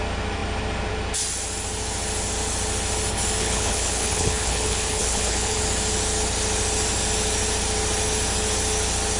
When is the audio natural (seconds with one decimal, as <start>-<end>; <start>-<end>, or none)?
0.0-3.4; 5.6-9.2